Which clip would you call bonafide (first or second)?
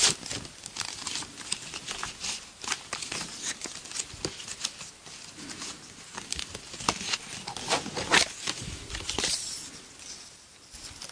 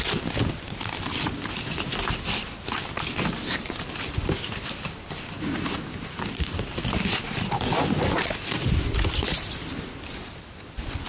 first